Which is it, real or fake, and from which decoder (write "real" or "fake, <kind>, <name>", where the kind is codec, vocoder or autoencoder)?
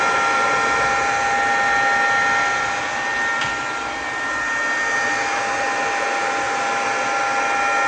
real